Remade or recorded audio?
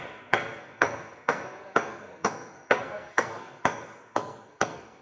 remade